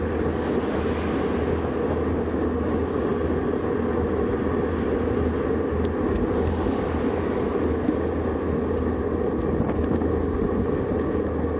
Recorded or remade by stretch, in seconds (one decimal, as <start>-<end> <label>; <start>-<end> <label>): 0.0-11.6 recorded

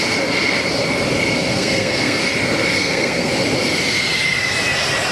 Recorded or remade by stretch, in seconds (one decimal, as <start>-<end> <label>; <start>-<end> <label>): 0.0-1.5 recorded; 1.5-2.2 remade; 2.2-2.8 recorded; 2.8-3.3 remade; 3.3-5.1 recorded

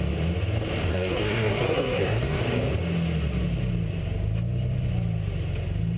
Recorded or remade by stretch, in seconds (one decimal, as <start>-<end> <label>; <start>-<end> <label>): 0.0-0.9 recorded; 0.9-2.4 remade; 2.4-6.0 recorded